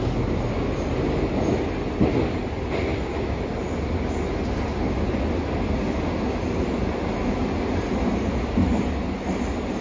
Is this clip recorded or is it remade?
recorded